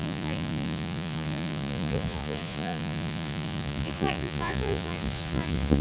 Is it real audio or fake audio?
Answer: fake